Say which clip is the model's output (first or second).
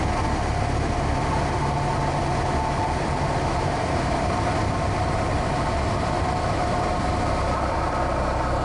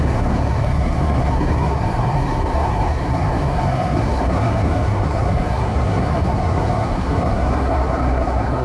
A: second